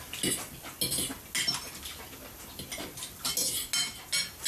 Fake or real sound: real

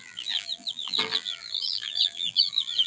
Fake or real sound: fake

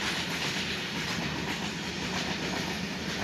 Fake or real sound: real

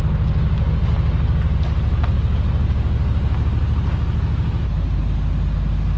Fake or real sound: real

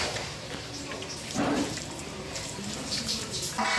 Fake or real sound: fake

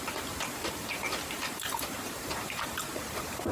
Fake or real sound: fake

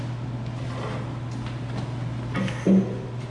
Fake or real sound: real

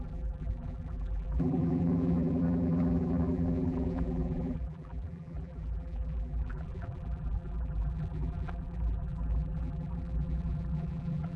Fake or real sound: fake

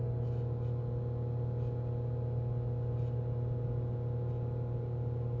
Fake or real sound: real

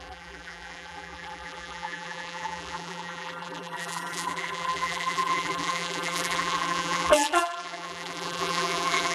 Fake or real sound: fake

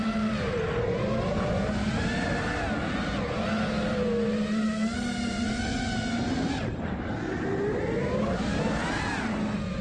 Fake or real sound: real